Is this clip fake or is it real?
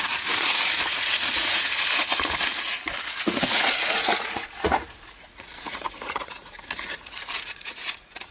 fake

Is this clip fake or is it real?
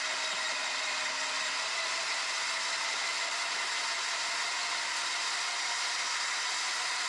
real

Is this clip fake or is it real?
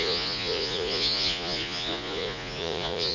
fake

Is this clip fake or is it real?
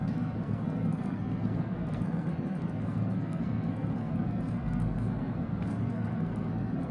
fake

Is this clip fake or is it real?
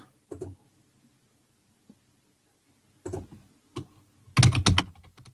real